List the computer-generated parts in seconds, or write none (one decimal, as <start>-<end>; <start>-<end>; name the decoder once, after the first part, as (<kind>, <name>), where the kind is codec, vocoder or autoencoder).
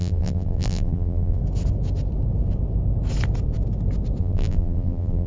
0.0-1.4 (vocoder, BigVGAN v2); 4.2-5.3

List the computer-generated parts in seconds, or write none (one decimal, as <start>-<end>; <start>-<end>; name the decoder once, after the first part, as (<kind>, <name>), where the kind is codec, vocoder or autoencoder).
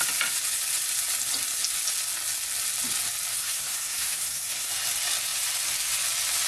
3.3-4.7 (codec, SNAC)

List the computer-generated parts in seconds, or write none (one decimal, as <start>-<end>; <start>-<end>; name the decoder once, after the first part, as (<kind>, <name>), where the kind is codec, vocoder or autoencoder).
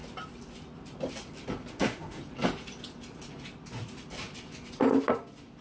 1.7-2.2 (autoencoder, DAC-VAE)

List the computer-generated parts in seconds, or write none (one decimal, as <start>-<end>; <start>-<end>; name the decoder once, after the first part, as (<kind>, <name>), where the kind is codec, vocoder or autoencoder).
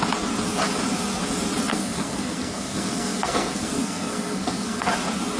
1.7-4.9 (codec, SNAC)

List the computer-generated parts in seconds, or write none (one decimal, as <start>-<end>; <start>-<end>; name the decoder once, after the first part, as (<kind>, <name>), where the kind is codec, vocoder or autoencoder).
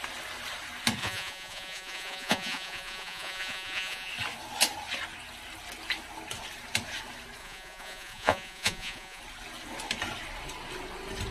1.0-4.1 (vocoder, Vocos); 7.4-9.2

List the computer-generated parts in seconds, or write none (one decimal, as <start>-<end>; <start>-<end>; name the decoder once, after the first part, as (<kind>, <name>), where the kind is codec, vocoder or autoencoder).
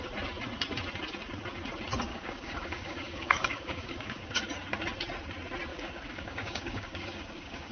2.1-4.4 (codec, DAC); 5.7-7.7